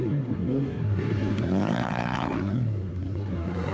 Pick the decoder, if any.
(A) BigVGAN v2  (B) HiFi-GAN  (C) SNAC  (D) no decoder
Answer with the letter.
C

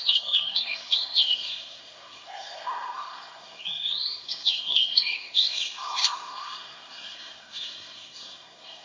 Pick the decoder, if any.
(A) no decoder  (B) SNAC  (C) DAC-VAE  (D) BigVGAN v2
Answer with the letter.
B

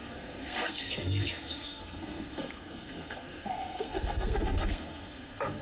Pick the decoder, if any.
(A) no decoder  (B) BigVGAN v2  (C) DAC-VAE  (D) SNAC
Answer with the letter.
D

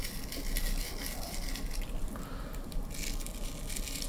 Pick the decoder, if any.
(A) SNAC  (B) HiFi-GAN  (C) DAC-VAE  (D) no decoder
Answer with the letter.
D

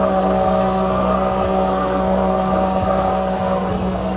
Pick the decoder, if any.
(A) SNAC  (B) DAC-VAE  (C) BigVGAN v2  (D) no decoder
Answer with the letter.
A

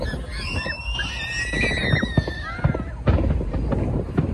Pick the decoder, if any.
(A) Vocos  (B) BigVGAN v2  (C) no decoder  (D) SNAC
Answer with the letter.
C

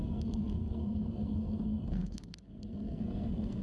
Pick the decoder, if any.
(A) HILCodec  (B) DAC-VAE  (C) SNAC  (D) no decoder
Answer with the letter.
C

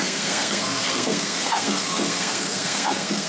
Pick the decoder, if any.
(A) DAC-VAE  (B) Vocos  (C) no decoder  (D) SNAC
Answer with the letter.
D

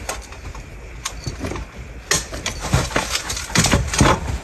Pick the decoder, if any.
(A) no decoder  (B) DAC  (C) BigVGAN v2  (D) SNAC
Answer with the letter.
A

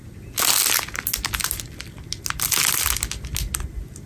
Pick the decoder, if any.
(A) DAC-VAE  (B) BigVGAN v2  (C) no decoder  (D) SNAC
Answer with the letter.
C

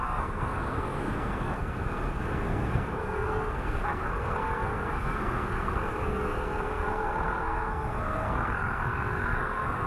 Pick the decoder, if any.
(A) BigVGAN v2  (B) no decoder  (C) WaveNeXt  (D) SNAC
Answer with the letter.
D